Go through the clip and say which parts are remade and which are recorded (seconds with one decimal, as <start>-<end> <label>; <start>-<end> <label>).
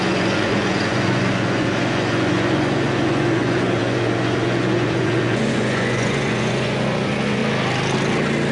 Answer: 0.0-7.4 remade; 7.4-8.5 recorded